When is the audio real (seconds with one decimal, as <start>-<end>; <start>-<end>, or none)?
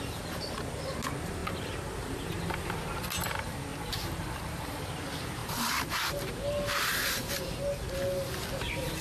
0.0-3.7; 4.8-5.4; 6.3-6.7; 7.5-9.0